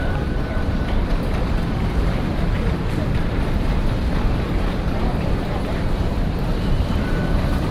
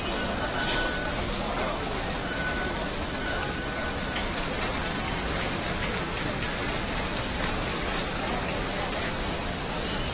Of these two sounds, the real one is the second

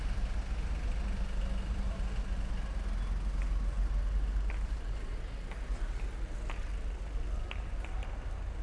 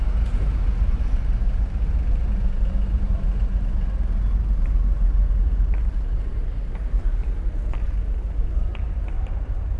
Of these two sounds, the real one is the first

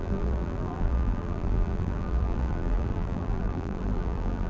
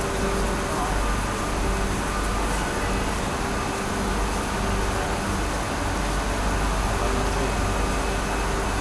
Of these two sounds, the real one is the second